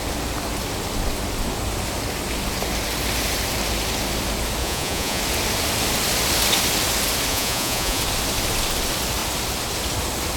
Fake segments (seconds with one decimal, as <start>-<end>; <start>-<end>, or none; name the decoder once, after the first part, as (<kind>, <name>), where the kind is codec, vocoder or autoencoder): 4.6-5.2 (vocoder, Vocos); 7.3-8.0